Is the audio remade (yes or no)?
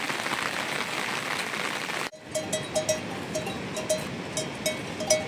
no